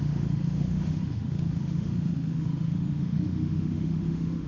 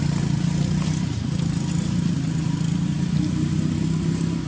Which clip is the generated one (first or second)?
first